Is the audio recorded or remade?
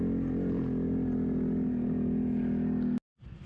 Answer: recorded